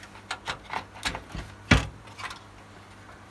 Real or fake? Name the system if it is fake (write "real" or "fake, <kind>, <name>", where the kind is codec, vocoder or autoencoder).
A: real